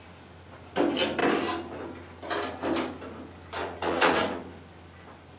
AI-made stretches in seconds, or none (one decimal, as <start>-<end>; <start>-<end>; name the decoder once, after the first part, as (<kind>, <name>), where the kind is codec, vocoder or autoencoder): 3.6-4.4 (vocoder, Vocos)